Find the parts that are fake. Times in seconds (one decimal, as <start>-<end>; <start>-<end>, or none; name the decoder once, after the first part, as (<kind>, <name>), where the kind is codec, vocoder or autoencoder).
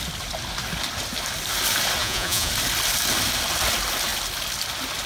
2.0-2.5 (vocoder, Vocos)